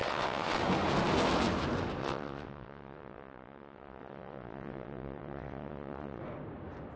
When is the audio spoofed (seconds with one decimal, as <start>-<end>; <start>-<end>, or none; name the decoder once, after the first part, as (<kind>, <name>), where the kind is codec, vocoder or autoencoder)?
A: 0.0-0.6 (vocoder, WaveNeXt); 2.0-6.2